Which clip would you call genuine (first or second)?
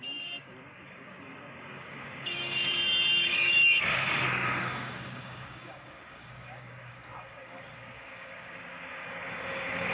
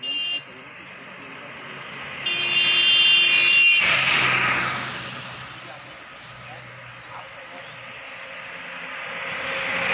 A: second